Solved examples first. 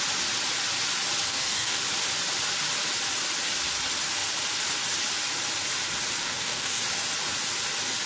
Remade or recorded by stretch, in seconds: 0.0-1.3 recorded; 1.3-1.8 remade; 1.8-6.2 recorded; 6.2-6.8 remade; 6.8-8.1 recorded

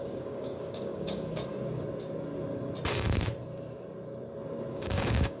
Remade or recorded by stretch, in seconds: 0.0-1.5 remade; 1.5-4.7 recorded; 4.7-5.4 remade

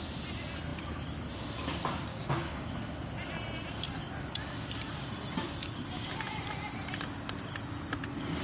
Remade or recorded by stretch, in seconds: 0.0-2.1 recorded; 2.1-2.7 remade; 2.7-8.4 recorded

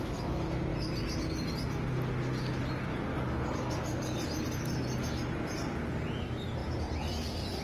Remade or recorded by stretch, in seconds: 0.0-3.1 recorded; 3.1-4.2 remade; 4.2-7.6 recorded

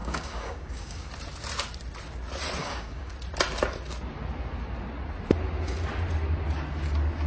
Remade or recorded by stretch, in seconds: 0.0-1.1 remade; 1.1-2.6 recorded; 2.6-3.1 remade; 3.1-7.3 recorded

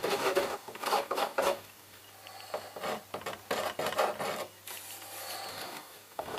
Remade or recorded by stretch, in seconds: 0.0-2.0 remade; 2.0-5.5 recorded; 5.5-6.4 remade

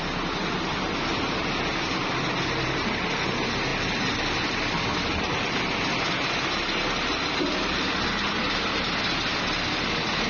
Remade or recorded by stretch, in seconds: 0.0-10.3 recorded

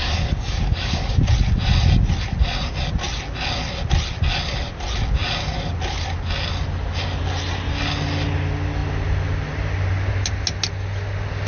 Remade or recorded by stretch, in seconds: 0.0-1.2 remade; 1.2-11.5 recorded